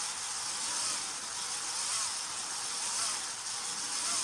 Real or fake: real